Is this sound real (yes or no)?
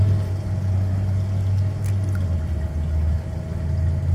yes